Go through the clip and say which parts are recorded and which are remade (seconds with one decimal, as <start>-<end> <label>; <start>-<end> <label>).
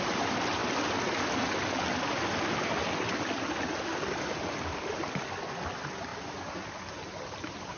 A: 0.0-7.8 recorded